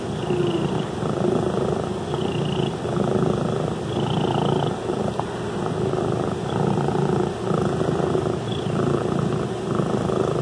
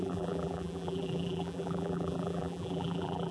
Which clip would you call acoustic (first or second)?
first